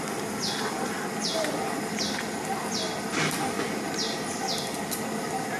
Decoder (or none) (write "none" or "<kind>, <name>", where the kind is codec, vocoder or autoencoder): none